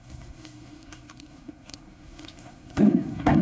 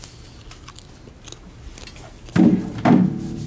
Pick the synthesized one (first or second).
first